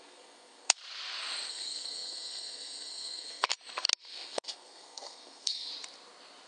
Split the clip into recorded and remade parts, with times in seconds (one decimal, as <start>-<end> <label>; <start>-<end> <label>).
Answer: 0.0-0.8 remade; 0.8-1.5 recorded; 1.5-3.5 remade; 3.5-4.0 recorded; 4.0-5.7 remade; 5.7-6.5 recorded